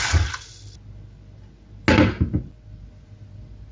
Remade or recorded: recorded